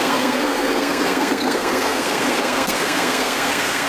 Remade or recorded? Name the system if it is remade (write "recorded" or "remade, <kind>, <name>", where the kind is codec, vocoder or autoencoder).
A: remade, codec, SNAC